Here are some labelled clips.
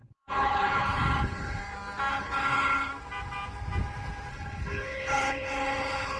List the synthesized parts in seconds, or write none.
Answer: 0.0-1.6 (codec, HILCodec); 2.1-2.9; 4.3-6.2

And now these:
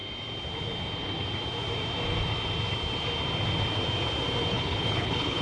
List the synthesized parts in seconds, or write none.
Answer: 4.5-5.4 (codec, HILCodec)

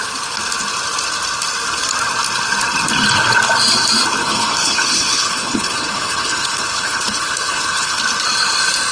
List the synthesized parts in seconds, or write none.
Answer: 4.2-8.0 (codec, HILCodec)